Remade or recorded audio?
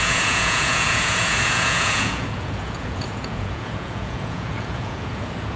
remade